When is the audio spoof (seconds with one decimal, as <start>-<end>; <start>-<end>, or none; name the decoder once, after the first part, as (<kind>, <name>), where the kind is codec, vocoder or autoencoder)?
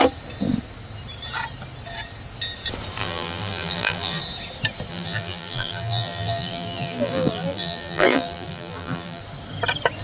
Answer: 3.0-4.2 (vocoder, BigVGAN v2); 4.9-9.2